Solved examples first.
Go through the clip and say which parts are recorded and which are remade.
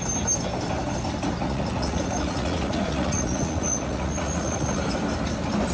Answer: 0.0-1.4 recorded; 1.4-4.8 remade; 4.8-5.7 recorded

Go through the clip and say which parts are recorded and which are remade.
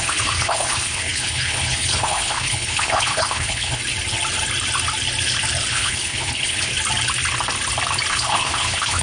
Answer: 0.0-3.8 remade; 3.8-5.7 recorded; 5.7-6.7 remade; 6.7-8.1 recorded; 8.1-9.0 remade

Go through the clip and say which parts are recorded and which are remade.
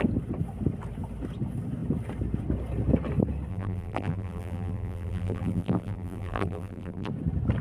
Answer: 0.0-3.5 recorded; 3.5-7.1 remade; 7.1-7.6 recorded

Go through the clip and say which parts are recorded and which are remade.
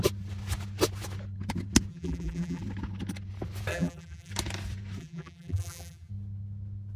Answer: 0.0-1.9 recorded; 1.9-2.6 remade; 2.6-3.7 recorded; 3.7-4.3 remade; 4.3-5.0 recorded; 5.0-6.1 remade; 6.1-7.0 recorded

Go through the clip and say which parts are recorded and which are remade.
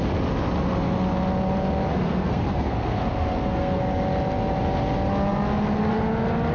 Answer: 0.0-1.9 recorded; 1.9-3.8 remade; 3.8-6.5 recorded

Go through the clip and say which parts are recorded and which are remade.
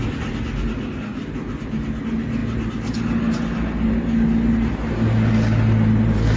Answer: 0.0-6.4 recorded